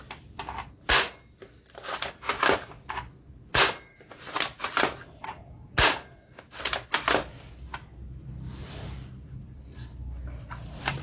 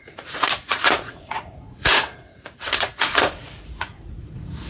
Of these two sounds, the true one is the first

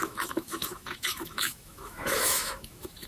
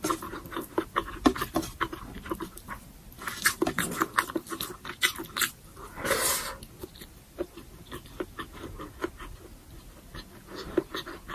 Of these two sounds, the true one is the second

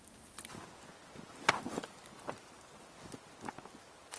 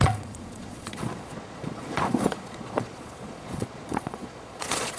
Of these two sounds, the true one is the first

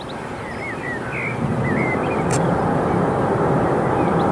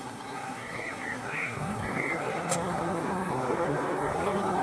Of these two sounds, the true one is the first